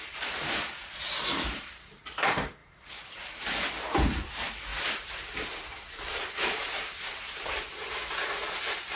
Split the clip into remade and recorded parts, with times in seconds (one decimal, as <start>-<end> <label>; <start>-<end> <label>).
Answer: 0.0-9.0 remade